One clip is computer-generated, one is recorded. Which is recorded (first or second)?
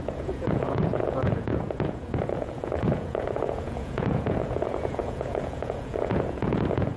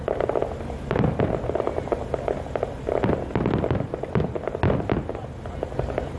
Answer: second